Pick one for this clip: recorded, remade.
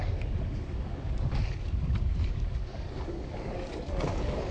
remade